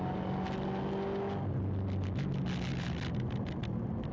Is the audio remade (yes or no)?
no